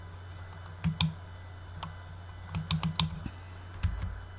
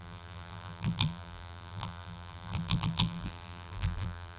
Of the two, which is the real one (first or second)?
first